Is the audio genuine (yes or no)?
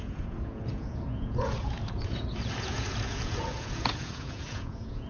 no